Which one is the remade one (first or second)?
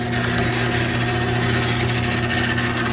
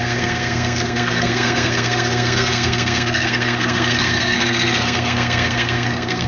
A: second